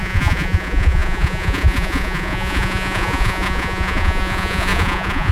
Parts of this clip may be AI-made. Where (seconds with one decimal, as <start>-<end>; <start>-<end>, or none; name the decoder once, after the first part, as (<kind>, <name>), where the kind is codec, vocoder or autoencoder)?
0.0-5.3 (vocoder, Vocos)